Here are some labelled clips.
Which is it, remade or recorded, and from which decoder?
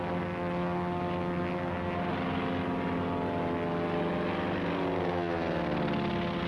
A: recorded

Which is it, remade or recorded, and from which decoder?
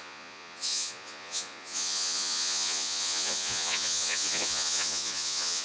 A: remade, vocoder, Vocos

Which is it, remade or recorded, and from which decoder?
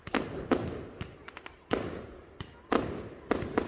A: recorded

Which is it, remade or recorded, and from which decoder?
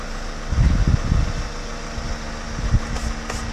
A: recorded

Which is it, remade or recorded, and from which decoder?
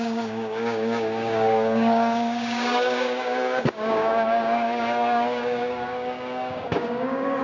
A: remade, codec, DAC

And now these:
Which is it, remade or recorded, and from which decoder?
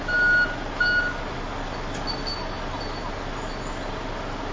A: recorded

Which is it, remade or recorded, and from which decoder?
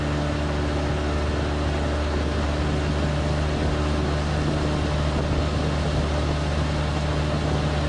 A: recorded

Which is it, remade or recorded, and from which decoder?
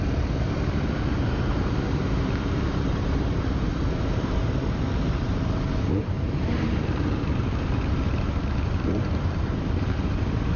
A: remade, vocoder, BigVGAN v2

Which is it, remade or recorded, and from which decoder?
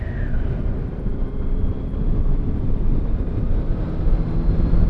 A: recorded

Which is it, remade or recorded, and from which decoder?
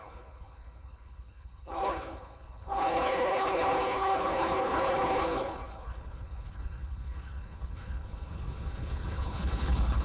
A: remade, codec, HILCodec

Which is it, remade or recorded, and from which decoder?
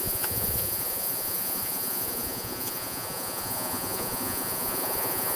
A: remade, vocoder, Vocos